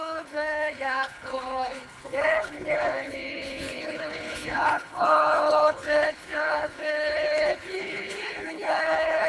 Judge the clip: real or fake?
fake